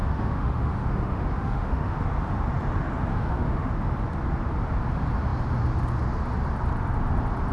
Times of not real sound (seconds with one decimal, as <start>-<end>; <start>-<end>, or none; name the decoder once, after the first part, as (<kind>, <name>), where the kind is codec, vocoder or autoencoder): 0.0-2.0 (autoencoder, DAC-VAE); 3.1-3.7